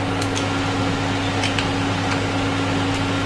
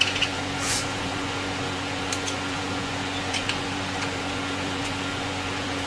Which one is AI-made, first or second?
second